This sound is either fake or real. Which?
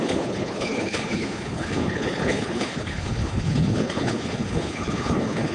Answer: fake